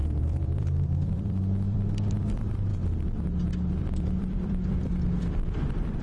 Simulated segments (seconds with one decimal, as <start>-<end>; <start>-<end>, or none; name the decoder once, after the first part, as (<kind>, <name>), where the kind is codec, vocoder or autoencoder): 0.0-2.7 (vocoder, BigVGAN v2); 3.8-6.0